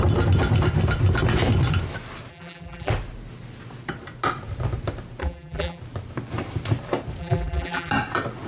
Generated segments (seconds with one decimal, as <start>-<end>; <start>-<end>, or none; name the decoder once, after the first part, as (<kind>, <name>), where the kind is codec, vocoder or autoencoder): 2.3-2.9 (vocoder, BigVGAN v2); 5.2-5.8; 7.2-7.9